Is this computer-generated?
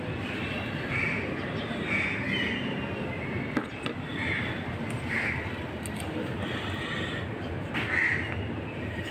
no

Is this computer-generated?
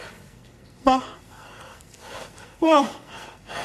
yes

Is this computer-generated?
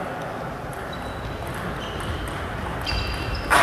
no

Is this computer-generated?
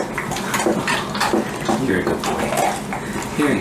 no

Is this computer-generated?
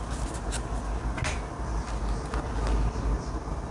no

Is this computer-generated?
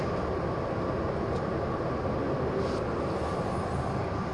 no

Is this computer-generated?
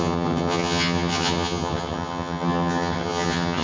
yes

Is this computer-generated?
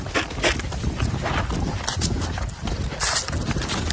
no